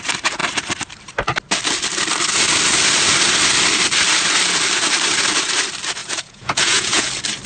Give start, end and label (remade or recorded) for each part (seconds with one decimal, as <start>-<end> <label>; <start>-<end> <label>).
0.0-6.0 recorded; 6.0-7.1 remade; 7.1-7.5 recorded